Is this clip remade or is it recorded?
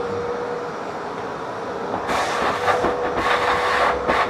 recorded